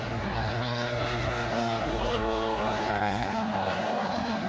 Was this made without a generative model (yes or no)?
no